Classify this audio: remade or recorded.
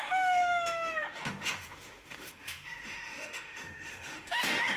remade